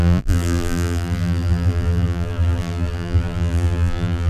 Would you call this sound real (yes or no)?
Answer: no